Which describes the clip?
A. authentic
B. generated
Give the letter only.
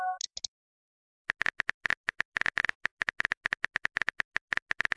A